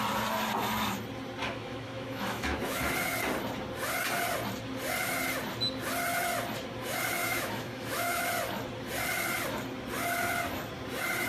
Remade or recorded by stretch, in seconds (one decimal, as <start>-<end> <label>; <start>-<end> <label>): 0.0-1.4 recorded; 1.4-2.9 remade; 2.9-7.2 recorded; 7.2-8.3 remade; 8.3-11.3 recorded